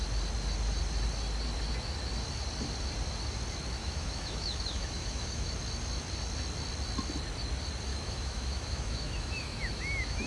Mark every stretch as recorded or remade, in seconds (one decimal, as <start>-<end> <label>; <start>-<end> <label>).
0.0-3.8 recorded; 3.8-5.5 remade; 5.5-7.9 recorded; 7.9-10.3 remade